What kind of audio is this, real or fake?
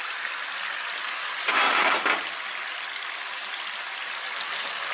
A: fake